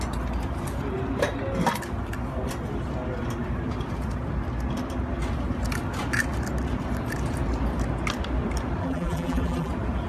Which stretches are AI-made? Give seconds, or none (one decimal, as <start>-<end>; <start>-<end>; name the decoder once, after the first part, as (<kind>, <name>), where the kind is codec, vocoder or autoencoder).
8.8-9.7 (vocoder, BigVGAN v2)